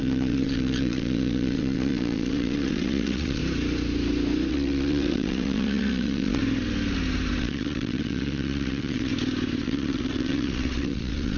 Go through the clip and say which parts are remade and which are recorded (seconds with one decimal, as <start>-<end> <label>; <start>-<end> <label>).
0.0-3.4 remade; 3.4-4.5 recorded; 4.5-6.4 remade; 6.4-7.4 recorded; 7.4-9.1 remade; 9.1-9.6 recorded; 9.6-11.4 remade